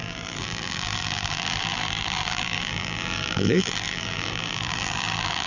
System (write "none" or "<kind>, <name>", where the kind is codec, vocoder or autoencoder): vocoder, BigVGAN v2